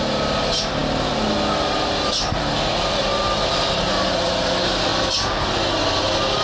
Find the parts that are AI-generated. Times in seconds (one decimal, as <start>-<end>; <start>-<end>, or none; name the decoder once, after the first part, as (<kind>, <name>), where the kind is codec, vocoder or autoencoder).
none

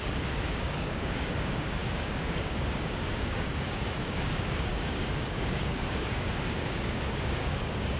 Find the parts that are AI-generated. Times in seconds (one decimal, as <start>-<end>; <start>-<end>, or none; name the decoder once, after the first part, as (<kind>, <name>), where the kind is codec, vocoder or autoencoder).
0.0-8.0 (codec, DAC)

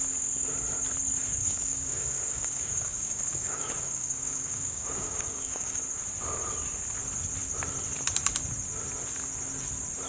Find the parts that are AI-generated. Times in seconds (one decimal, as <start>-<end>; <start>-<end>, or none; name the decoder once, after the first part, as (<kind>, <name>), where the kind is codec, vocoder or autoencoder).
1.4-5.8 (codec, DAC)

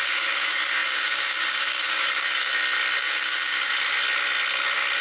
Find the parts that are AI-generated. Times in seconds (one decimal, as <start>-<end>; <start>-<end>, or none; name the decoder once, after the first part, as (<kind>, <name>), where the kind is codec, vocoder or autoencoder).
0.0-2.5 (codec, DAC); 3.0-3.7